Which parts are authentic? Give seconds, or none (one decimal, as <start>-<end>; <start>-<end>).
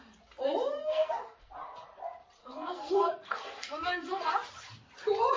0.0-0.8; 1.5-2.4; 4.3-5.4